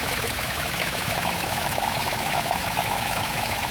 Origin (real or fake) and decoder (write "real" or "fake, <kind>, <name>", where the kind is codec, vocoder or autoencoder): fake, autoencoder, DAC-VAE